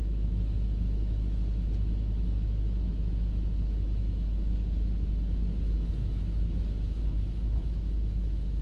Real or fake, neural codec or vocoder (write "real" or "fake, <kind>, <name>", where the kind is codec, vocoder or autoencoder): fake, autoencoder, DAC-VAE